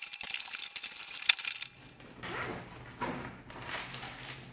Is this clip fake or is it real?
real